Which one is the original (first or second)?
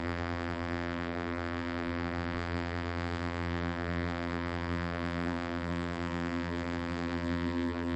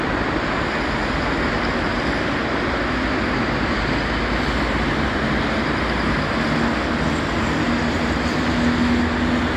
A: second